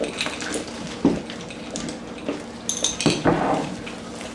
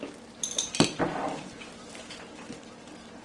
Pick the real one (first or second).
first